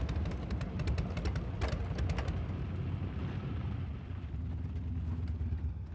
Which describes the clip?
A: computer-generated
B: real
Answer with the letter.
B